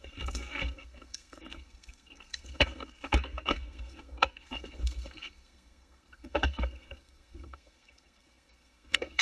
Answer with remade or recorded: remade